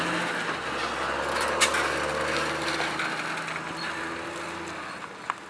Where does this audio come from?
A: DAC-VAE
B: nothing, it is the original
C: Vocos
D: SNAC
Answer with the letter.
B